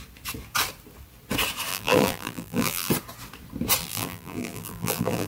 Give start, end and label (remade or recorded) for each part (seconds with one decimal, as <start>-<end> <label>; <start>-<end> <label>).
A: 0.0-1.7 recorded; 1.7-2.9 remade; 2.9-3.8 recorded; 3.8-5.3 remade